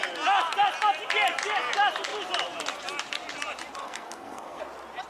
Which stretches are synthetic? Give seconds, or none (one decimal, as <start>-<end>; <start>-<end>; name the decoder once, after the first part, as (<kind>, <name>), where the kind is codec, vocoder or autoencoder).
3.8-4.6 (codec, SNAC)